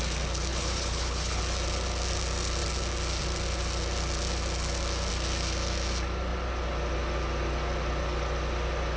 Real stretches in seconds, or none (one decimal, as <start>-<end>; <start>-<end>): 0.0-0.5; 1.4-9.0

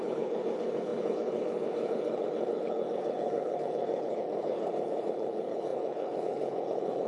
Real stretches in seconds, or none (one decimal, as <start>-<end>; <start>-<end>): none